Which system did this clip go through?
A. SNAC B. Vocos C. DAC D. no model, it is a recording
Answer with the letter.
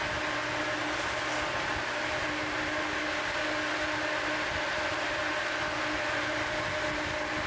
D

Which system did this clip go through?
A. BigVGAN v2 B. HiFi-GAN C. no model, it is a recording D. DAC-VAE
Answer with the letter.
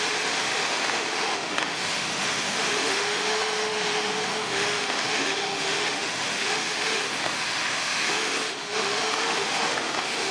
D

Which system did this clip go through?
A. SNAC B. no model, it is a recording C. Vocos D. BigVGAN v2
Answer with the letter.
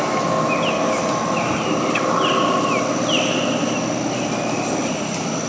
B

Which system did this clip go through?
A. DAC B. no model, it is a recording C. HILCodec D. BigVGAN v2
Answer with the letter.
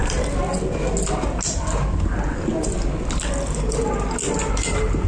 B